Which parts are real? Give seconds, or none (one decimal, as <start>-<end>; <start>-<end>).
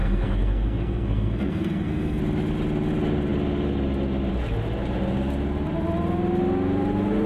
2.2-7.3